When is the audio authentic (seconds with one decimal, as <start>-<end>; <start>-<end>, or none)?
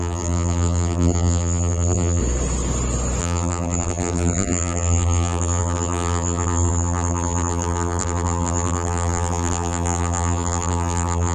2.2-3.2